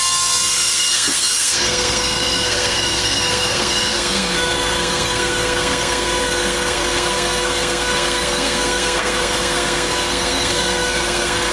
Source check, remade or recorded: remade